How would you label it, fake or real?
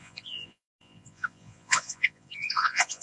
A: fake